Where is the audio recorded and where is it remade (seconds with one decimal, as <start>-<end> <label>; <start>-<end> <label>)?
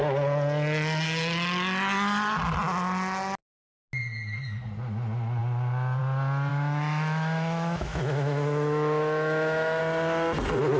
0.0-6.5 recorded; 6.5-9.8 remade; 9.8-10.8 recorded